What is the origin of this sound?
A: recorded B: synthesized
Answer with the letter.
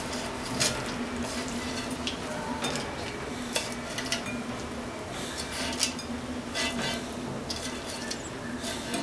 A